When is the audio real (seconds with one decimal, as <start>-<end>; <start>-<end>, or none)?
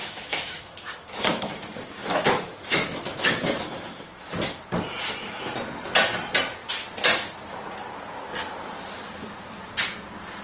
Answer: 4.3-10.4